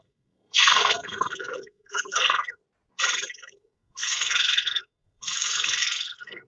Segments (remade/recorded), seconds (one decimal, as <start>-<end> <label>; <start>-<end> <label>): 0.0-2.6 remade; 2.6-3.3 recorded; 3.3-6.5 remade